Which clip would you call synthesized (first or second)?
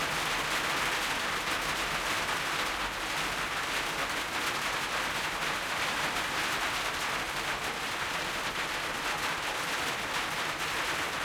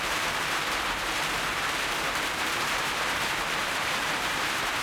second